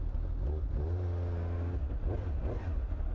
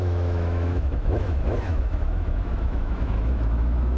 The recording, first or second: first